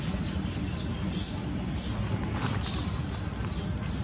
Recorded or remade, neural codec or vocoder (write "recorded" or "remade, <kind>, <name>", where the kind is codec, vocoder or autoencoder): recorded